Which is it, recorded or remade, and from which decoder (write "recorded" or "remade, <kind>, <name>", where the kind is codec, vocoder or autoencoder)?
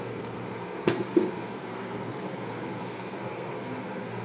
remade, codec, SNAC